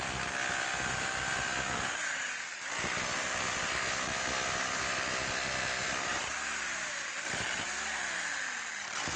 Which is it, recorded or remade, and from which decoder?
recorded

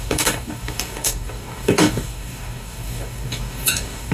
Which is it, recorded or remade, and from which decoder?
remade, codec, DAC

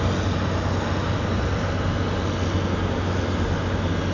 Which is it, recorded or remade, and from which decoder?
recorded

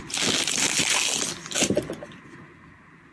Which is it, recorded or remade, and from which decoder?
recorded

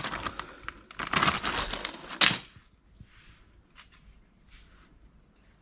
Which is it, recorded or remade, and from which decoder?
recorded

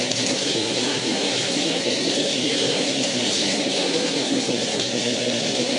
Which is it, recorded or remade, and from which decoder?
remade, codec, SNAC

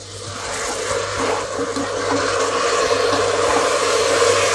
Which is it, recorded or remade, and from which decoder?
recorded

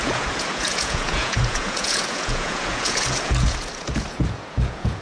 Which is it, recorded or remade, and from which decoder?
remade, vocoder, Vocos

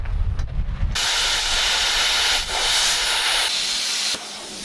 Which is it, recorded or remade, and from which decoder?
recorded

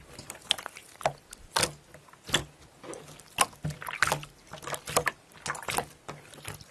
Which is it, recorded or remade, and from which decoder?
recorded